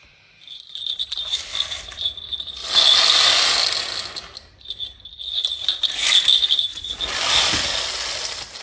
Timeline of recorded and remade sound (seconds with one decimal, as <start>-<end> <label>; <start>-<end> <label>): 0.0-8.6 recorded